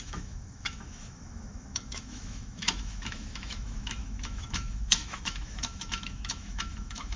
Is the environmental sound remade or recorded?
remade